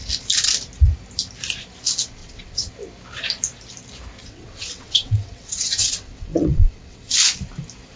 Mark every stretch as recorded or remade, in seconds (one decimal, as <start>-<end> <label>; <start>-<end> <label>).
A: 0.0-2.2 recorded; 2.2-2.7 remade; 2.7-4.2 recorded; 4.2-7.1 remade; 7.1-8.0 recorded